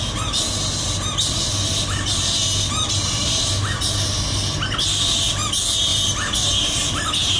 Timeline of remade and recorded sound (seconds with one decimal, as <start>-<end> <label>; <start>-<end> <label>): 0.0-7.4 recorded